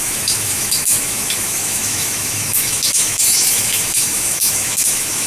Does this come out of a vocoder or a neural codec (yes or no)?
yes